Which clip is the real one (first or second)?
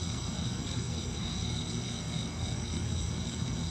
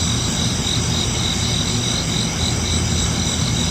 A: second